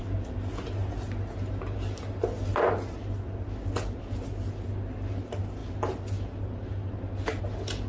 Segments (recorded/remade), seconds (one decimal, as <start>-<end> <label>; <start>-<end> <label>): 0.0-7.9 recorded